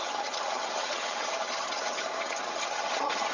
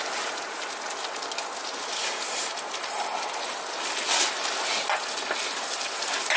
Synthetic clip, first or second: first